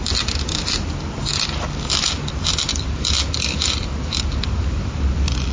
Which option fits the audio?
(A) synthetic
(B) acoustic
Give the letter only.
B